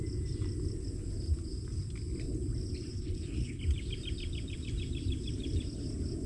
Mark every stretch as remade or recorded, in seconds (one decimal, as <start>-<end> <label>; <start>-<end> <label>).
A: 0.0-2.9 recorded; 2.9-3.6 remade; 3.6-6.3 recorded